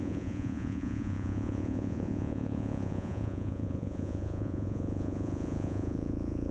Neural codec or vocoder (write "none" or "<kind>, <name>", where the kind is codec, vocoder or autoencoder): vocoder, Vocos